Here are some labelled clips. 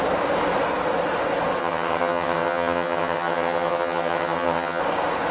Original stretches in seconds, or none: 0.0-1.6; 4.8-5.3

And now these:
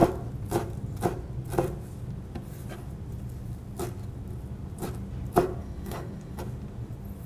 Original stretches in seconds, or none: 0.0-5.6; 6.4-7.3